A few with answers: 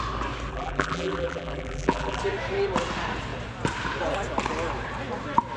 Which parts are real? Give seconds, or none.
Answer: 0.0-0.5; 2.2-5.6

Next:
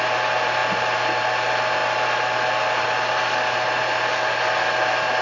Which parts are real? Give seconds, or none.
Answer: 0.0-5.2

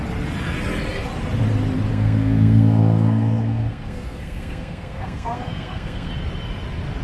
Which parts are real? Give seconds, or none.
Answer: 0.0-1.9; 6.1-7.0